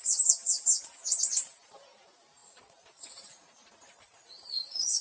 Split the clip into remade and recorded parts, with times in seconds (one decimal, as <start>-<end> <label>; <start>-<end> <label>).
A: 0.0-2.4 recorded; 2.4-5.0 remade